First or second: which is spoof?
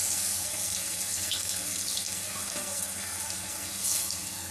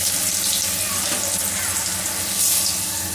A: first